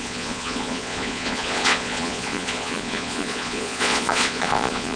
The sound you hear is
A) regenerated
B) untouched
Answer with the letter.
A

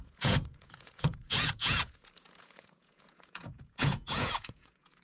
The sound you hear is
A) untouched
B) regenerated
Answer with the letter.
B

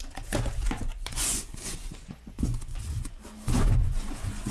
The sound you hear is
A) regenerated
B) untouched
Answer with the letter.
A